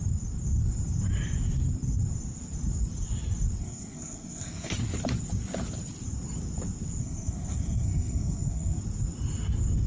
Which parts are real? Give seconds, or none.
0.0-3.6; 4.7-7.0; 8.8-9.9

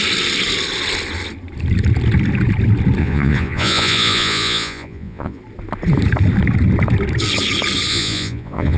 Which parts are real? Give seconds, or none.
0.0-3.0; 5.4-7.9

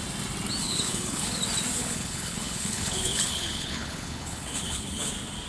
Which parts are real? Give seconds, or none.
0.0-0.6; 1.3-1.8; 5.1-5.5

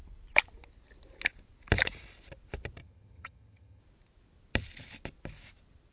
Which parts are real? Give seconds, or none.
0.0-2.8; 3.8-5.9